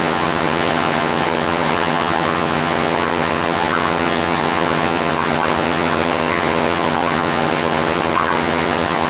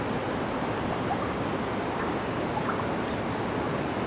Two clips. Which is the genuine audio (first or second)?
second